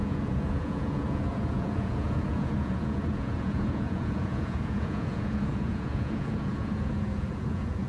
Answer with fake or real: fake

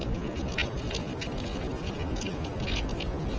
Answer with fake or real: fake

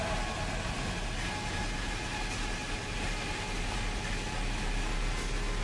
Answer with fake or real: real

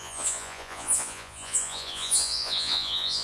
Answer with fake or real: fake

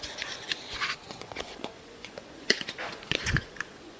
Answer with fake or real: fake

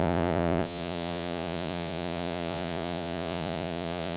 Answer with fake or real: fake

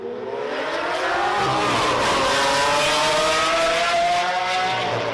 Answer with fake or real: real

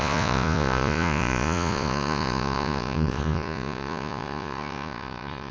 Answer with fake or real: fake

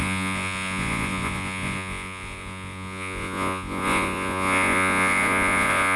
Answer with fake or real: fake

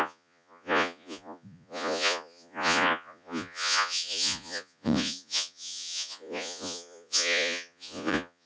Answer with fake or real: fake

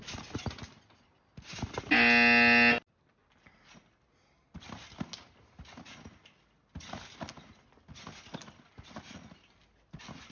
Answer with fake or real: real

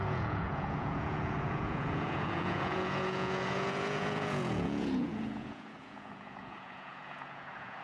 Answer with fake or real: fake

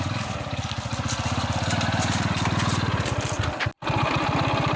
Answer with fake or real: real